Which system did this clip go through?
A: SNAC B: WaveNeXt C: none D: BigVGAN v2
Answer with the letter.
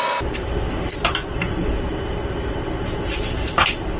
C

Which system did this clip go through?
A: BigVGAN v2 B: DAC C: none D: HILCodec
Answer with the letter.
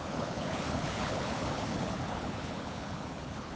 D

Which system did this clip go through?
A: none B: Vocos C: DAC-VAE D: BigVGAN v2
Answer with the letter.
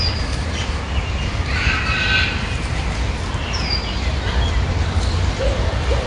A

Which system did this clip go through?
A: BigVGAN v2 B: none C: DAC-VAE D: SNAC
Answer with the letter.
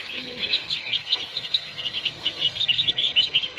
D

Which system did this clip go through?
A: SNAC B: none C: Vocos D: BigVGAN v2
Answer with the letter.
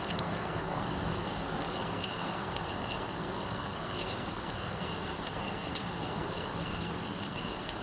A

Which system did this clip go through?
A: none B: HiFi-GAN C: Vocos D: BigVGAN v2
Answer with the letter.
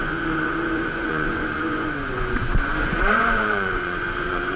C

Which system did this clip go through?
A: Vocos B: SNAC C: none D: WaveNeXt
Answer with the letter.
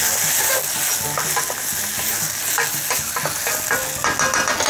C